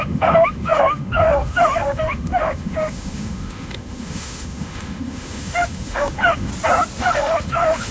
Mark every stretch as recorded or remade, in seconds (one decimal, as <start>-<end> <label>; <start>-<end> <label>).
0.0-6.5 remade; 6.5-7.0 recorded; 7.0-7.9 remade